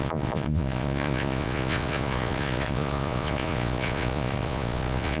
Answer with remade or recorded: remade